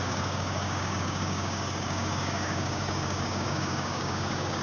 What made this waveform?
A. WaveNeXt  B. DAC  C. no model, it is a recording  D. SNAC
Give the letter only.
B